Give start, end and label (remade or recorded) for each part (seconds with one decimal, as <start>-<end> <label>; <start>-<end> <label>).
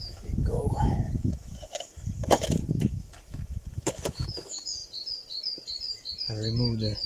0.0-4.8 remade; 4.8-7.1 recorded